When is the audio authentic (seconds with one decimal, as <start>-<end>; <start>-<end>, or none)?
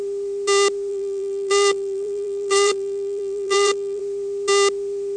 0.0-0.9; 4.0-5.2